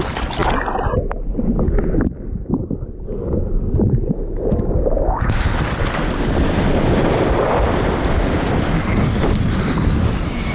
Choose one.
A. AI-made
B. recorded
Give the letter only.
B